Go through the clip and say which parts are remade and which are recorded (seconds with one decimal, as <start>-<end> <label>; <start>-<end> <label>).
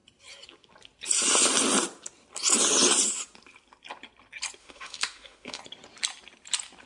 0.0-4.6 recorded; 4.6-5.6 remade; 5.6-6.9 recorded